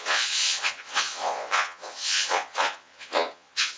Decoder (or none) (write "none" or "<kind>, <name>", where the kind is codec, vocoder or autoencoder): vocoder, Vocos